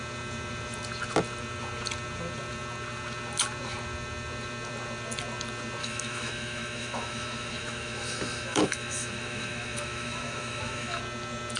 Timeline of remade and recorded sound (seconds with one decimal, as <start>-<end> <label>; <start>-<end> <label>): 0.0-5.8 recorded; 5.8-11.0 remade; 11.0-11.6 recorded